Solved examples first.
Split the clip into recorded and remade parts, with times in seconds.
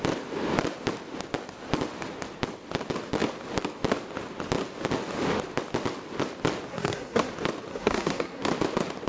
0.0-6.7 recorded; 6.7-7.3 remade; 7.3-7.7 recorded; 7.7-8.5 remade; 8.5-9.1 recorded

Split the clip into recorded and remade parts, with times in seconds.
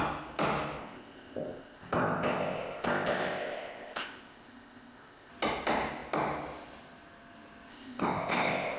0.0-0.8 recorded; 0.8-5.3 remade; 5.3-7.7 recorded; 7.7-8.8 remade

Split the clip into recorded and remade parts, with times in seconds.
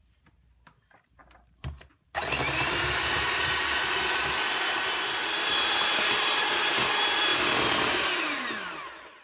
0.0-9.2 remade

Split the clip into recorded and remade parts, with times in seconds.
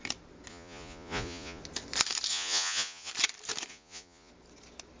0.0-0.5 recorded; 0.5-1.6 remade; 1.6-2.3 recorded; 2.3-3.1 remade; 3.1-3.7 recorded; 3.7-4.3 remade; 4.3-5.0 recorded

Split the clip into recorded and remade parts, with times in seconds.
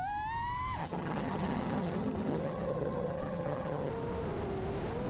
0.0-0.8 recorded; 0.8-3.9 remade; 3.9-5.1 recorded